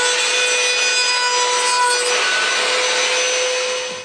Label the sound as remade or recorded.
recorded